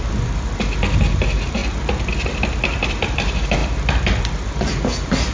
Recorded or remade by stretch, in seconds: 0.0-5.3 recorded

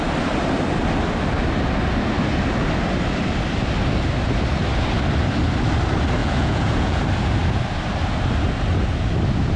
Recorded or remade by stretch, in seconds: 0.0-6.2 recorded; 6.2-7.0 remade; 7.0-9.6 recorded

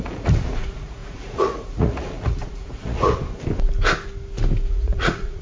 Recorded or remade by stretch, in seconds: 0.0-3.2 remade; 3.2-4.7 recorded; 4.7-5.4 remade

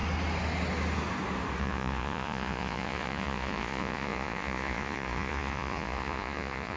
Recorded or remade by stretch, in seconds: 0.0-1.6 recorded; 1.6-6.8 remade

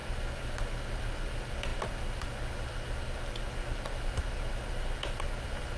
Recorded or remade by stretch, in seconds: 0.0-5.8 recorded

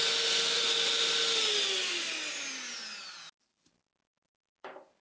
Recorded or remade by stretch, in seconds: 0.0-5.0 recorded

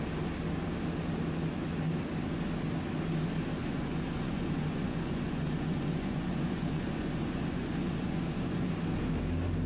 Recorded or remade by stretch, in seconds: 0.0-3.6 recorded; 3.6-8.7 remade; 8.7-9.7 recorded